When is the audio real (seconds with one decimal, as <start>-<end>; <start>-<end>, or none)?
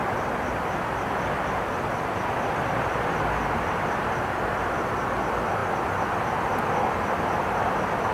4.9-8.1